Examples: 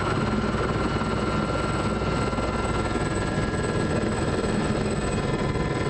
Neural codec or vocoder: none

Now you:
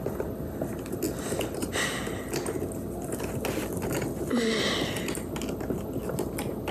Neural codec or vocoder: none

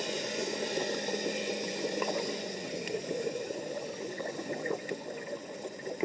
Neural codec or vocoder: vocoder, Vocos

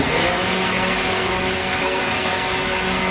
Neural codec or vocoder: codec, SNAC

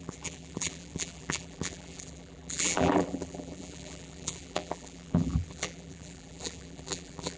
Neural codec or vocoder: vocoder, BigVGAN v2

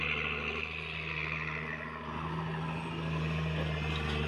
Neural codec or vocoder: none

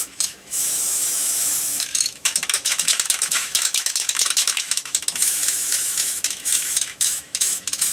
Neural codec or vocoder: autoencoder, DAC-VAE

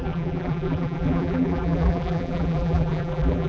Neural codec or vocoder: vocoder, BigVGAN v2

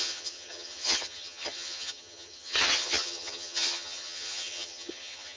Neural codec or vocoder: vocoder, HiFi-GAN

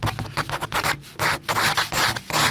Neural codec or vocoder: none